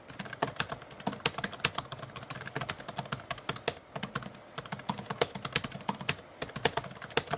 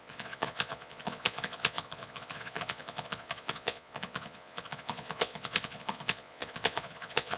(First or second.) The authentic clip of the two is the first